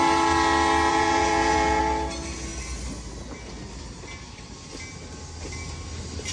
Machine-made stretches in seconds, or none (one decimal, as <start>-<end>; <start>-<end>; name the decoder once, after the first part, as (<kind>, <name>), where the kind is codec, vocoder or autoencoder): 0.9-1.8 (vocoder, Vocos)